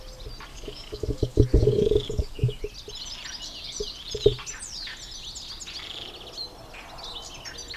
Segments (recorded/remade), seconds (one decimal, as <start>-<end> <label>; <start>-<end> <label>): 0.0-0.5 recorded; 0.5-2.6 remade; 2.6-7.8 recorded